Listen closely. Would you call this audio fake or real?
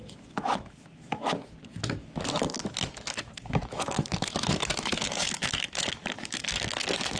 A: fake